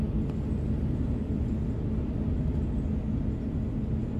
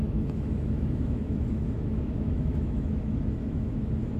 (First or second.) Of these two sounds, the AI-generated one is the second